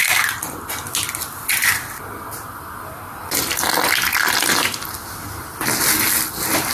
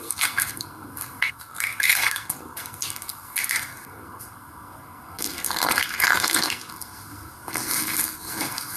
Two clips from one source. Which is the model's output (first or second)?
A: second